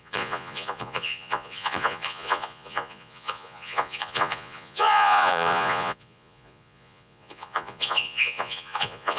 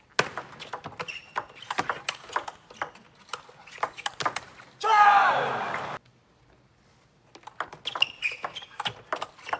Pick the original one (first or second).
second